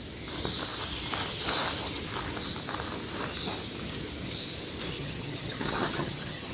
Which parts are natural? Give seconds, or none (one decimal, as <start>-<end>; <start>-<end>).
0.0-4.9